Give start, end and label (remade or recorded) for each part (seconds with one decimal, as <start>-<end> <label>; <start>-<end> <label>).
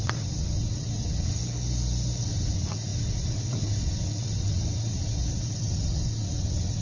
0.0-1.4 remade; 1.4-2.2 recorded; 2.2-6.8 remade